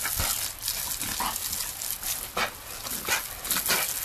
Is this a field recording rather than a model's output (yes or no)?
yes